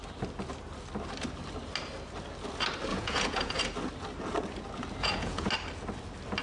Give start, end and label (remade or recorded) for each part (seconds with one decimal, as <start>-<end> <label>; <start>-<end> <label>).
0.0-2.9 recorded; 2.9-3.6 remade; 3.6-5.0 recorded; 5.0-5.5 remade; 5.5-6.4 recorded